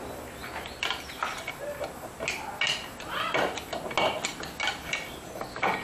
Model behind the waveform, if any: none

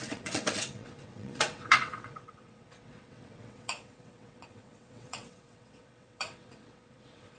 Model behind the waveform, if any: vocoder, WaveNeXt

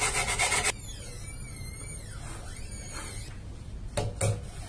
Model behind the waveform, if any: none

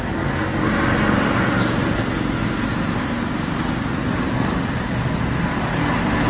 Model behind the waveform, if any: none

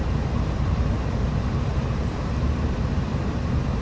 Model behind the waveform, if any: vocoder, BigVGAN v2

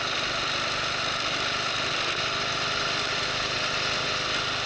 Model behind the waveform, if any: none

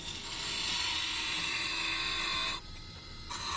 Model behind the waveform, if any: vocoder, BigVGAN v2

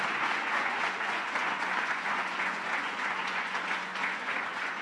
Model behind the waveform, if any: vocoder, Vocos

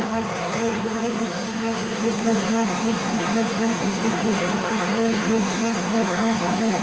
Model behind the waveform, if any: codec, SNAC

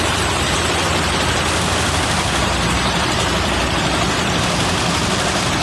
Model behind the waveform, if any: none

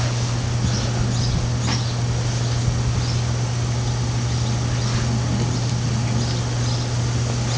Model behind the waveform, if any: none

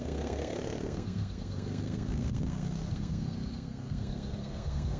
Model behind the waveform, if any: codec, SNAC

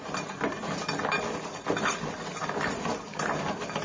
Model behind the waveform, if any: none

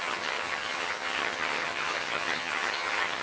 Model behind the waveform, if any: vocoder, HiFi-GAN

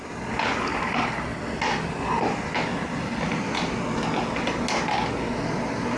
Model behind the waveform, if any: none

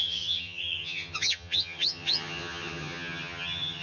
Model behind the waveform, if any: vocoder, HiFi-GAN